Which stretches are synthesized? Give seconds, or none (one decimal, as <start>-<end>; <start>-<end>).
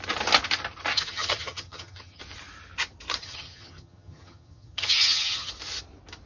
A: 0.9-2.2; 3.2-5.5